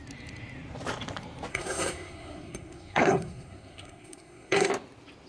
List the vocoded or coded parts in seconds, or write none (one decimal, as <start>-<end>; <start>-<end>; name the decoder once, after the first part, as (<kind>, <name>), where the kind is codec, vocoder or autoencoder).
1.5-4.7 (codec, SNAC)